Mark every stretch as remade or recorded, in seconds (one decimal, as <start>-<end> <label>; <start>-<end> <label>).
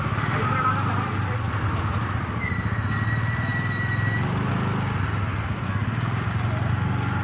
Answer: 0.0-7.2 recorded